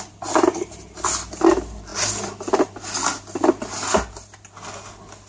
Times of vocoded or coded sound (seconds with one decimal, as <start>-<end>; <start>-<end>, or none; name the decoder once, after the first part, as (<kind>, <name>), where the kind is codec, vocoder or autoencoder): none